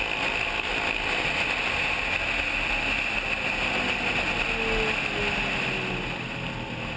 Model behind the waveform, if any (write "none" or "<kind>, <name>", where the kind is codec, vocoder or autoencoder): none